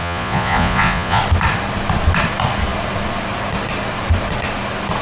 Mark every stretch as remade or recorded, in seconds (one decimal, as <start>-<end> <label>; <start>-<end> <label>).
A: 0.0-1.2 remade; 1.2-5.0 recorded